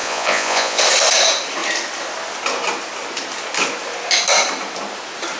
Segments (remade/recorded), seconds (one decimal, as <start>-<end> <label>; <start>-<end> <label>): 0.0-0.8 remade; 0.8-5.4 recorded